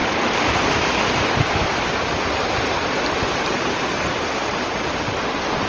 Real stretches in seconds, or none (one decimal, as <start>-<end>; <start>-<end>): 0.0-5.7